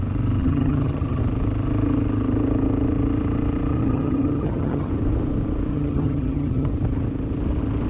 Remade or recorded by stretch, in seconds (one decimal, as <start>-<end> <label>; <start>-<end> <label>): 0.0-0.4 recorded; 0.4-1.2 remade; 1.2-3.7 recorded; 3.7-4.9 remade; 4.9-5.7 recorded; 5.7-6.7 remade; 6.7-7.9 recorded